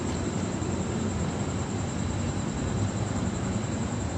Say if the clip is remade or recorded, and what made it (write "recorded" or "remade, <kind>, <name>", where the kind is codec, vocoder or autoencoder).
remade, vocoder, BigVGAN v2